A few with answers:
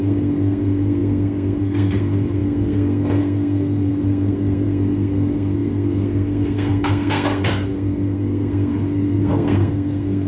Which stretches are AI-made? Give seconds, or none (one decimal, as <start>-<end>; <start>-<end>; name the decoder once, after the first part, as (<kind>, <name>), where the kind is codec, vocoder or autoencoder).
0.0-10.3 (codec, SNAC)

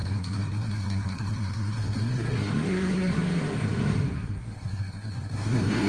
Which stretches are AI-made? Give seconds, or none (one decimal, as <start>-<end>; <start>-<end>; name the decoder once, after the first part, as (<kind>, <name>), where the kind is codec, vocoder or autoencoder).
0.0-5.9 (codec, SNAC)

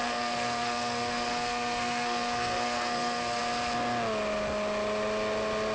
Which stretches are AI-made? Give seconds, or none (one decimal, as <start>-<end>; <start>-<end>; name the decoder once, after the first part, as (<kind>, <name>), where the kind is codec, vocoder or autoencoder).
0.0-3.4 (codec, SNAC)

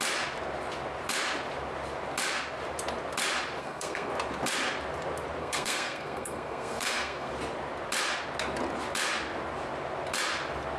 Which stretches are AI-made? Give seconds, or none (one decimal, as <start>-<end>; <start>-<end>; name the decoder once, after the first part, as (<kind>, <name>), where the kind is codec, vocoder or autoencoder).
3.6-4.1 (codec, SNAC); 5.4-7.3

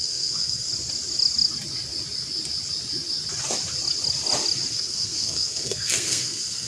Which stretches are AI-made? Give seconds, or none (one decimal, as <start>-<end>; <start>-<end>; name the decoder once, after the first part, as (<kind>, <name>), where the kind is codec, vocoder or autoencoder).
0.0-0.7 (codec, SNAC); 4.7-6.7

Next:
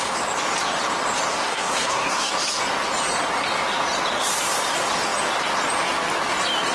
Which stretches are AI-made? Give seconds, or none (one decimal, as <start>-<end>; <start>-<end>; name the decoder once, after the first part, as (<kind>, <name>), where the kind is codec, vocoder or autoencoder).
1.3-2.3 (codec, SNAC)

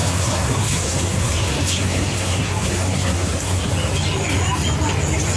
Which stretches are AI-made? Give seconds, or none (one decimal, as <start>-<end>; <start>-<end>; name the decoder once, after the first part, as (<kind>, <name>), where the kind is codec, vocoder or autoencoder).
0.0-3.7 (codec, SNAC)